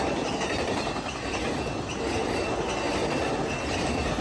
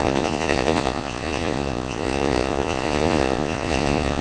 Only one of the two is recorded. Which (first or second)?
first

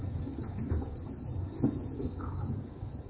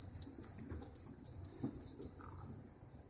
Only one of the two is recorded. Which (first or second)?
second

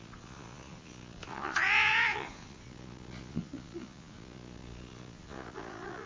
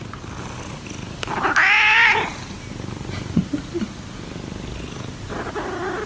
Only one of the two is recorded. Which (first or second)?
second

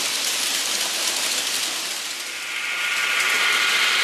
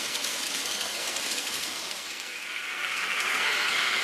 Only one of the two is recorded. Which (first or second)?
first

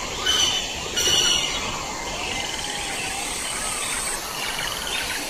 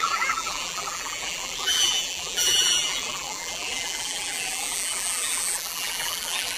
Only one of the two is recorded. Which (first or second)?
first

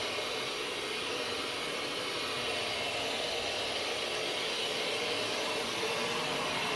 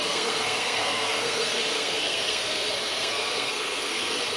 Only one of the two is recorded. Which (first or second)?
first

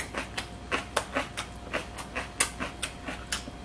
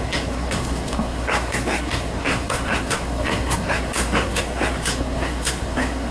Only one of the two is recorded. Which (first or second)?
first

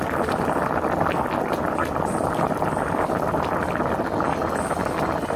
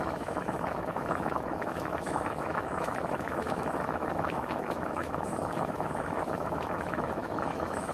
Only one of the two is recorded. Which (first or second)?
first